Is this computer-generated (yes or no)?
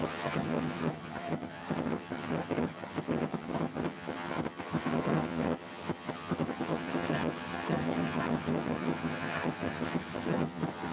yes